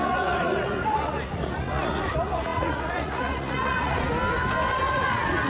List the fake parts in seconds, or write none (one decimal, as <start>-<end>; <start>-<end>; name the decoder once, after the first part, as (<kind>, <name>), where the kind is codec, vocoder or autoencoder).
0.0-4.0 (vocoder, Vocos); 4.7-5.5